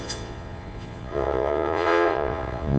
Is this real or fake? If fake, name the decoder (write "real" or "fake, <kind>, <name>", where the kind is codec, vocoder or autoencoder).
fake, vocoder, Vocos